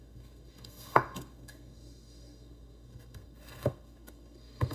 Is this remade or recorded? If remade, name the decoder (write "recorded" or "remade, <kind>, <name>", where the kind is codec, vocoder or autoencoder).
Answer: remade, codec, SNAC